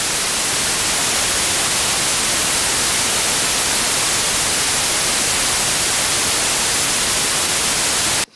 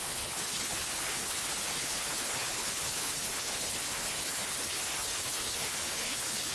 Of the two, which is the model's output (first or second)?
second